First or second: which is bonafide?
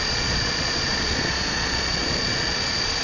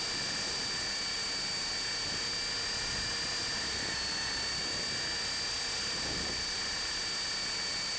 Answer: second